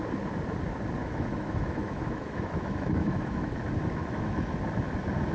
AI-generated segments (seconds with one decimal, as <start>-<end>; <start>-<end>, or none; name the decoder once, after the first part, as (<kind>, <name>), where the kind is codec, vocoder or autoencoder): 1.0-3.6 (autoencoder, DAC-VAE); 4.0-4.5